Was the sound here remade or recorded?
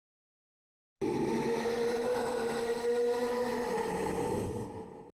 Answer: recorded